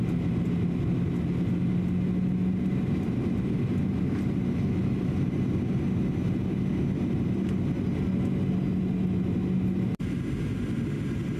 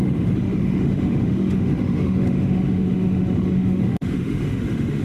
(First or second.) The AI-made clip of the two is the second